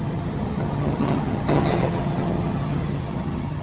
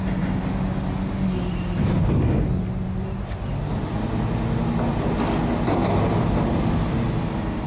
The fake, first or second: first